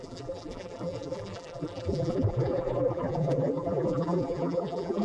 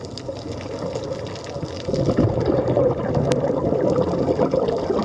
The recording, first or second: second